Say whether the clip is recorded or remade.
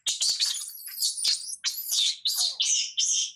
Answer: recorded